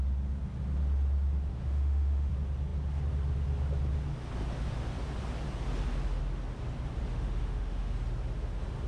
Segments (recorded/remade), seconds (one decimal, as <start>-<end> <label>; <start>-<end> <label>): 0.0-1.5 recorded; 1.5-2.3 remade; 2.3-7.1 recorded; 7.1-7.9 remade; 7.9-8.9 recorded